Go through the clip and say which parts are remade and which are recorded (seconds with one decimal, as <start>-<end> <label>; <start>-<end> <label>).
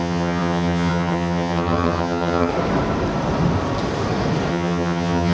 0.0-2.5 remade; 2.5-4.5 recorded; 4.5-5.3 remade